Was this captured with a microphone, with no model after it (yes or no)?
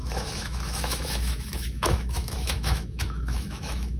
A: no